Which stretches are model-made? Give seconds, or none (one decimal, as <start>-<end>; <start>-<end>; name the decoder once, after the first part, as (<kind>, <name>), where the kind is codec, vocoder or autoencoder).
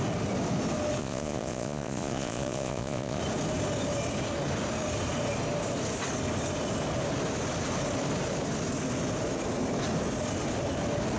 1.0-3.2 (vocoder, Vocos)